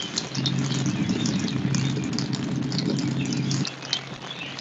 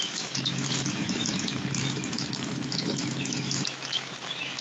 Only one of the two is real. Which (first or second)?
first